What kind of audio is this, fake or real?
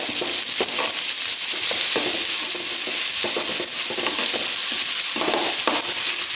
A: real